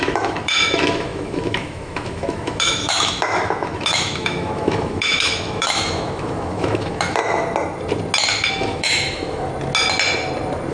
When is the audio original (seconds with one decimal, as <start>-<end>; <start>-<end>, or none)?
7.2-8.5; 9.5-10.7